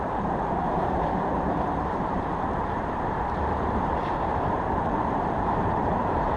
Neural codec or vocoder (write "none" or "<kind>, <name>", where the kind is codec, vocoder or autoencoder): vocoder, BigVGAN v2